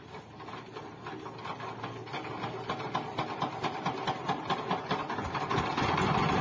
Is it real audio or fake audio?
real